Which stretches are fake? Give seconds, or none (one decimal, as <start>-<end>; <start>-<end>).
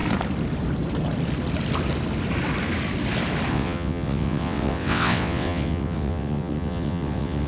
3.5-7.5